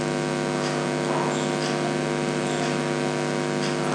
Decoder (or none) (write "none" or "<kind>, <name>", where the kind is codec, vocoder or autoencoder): none